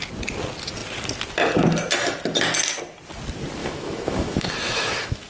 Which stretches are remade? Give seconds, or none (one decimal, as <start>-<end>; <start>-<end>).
3.6-5.3